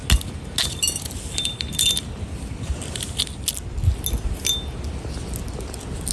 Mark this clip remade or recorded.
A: recorded